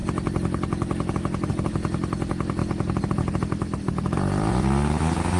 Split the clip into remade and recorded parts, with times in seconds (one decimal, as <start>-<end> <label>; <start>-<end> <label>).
0.0-5.4 recorded